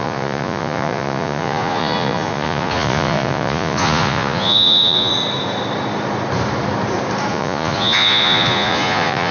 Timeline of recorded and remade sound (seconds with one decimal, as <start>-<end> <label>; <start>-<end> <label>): 0.0-5.1 remade; 5.1-7.3 recorded; 7.3-9.3 remade